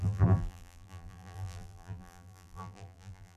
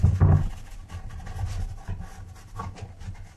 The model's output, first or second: first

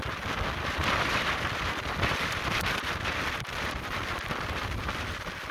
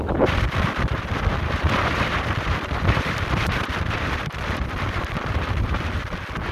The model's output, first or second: second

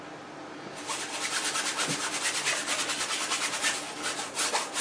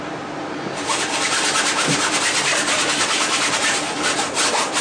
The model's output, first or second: second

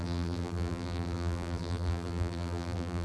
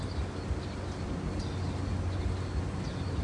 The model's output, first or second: first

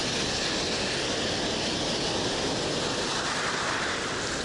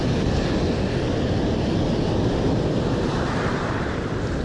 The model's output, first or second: second